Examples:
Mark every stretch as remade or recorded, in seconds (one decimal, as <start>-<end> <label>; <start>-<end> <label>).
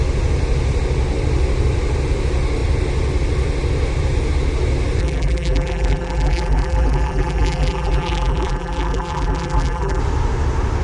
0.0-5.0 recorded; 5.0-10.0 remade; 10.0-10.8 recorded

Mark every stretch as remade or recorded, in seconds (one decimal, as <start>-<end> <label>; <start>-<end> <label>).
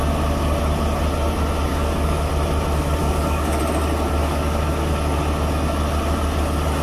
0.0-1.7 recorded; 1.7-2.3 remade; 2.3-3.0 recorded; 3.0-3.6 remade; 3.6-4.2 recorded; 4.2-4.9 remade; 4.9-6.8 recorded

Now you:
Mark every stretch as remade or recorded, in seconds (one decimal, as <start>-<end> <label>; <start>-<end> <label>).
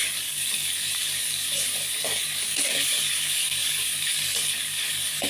0.0-5.3 remade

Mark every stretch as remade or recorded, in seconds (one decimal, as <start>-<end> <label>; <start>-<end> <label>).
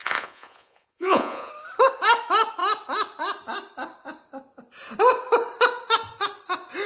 0.0-1.5 remade; 1.5-6.9 recorded